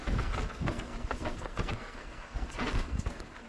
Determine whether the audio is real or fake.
fake